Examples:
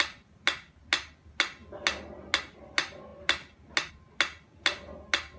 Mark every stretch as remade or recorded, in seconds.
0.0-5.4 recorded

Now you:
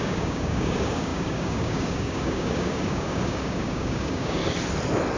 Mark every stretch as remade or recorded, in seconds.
0.0-4.4 remade; 4.4-5.2 recorded

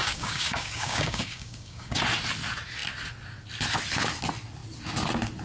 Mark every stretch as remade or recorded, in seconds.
0.0-2.0 remade; 2.0-5.4 recorded

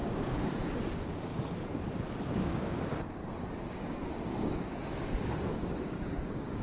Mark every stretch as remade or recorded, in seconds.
0.0-1.3 remade; 1.3-2.3 recorded; 2.3-3.2 remade; 3.2-3.7 recorded; 3.7-6.6 remade

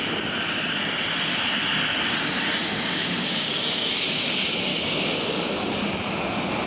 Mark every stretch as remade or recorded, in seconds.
0.0-2.6 recorded; 2.6-3.9 remade; 3.9-4.7 recorded; 4.7-5.5 remade; 5.5-6.7 recorded

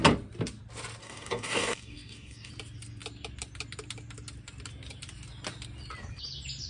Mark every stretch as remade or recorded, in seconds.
0.0-1.0 recorded; 1.0-2.5 remade; 2.5-6.7 recorded

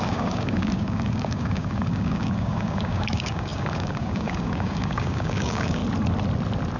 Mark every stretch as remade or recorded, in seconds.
0.0-5.8 remade; 5.8-6.8 recorded

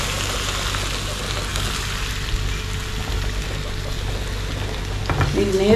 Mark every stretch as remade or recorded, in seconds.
0.0-5.8 recorded